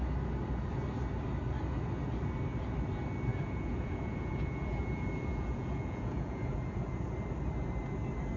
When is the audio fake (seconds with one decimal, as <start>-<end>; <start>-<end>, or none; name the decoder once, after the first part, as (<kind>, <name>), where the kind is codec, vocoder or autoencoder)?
3.3-7.0 (vocoder, Vocos)